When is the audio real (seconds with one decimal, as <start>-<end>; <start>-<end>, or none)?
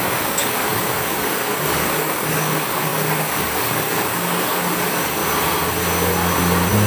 5.2-6.9